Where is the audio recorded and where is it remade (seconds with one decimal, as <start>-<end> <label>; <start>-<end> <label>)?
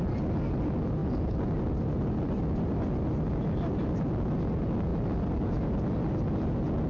0.0-6.9 recorded